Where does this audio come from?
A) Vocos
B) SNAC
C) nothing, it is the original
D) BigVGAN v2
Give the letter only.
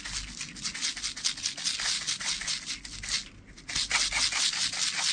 C